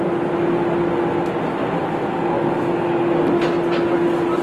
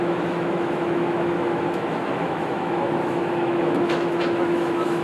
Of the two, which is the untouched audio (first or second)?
first